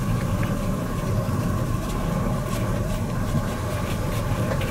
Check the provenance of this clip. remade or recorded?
recorded